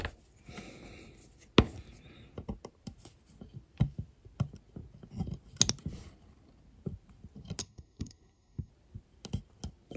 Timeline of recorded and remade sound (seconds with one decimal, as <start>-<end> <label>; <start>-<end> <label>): 0.0-7.6 recorded; 7.6-8.7 remade; 8.7-10.0 recorded